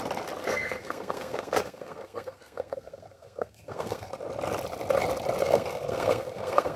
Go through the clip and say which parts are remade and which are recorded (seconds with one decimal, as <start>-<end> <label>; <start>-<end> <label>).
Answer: 0.0-0.4 recorded; 0.4-4.1 remade; 4.1-5.4 recorded; 5.4-6.8 remade